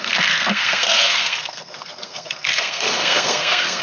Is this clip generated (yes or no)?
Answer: yes